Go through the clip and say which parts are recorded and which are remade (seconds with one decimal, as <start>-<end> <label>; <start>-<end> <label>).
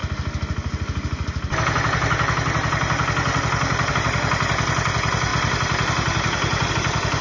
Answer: 0.0-5.3 recorded; 5.3-6.7 remade; 6.7-7.2 recorded